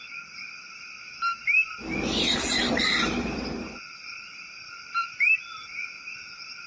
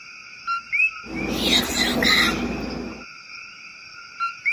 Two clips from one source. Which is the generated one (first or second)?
first